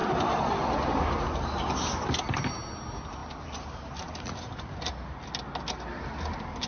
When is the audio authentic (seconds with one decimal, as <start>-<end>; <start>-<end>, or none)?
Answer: 0.0-6.7